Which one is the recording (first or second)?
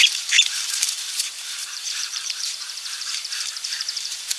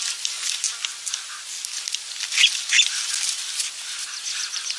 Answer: second